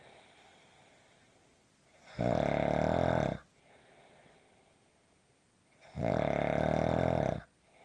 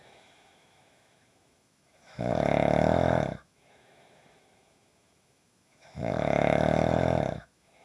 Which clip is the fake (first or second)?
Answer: second